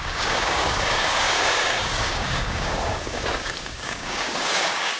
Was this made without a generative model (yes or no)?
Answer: no